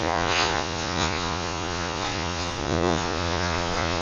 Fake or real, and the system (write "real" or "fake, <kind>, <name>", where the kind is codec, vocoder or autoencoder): fake, vocoder, Vocos